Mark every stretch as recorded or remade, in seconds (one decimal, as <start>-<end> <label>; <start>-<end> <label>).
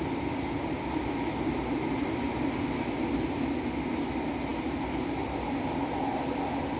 0.0-6.8 recorded